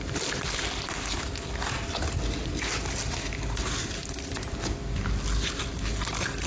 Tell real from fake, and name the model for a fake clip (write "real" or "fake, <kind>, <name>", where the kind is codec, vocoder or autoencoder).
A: real